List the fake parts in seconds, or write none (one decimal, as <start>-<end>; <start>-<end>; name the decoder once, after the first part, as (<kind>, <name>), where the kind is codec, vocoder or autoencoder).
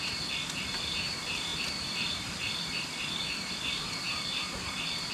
1.5-3.8 (vocoder, BigVGAN v2)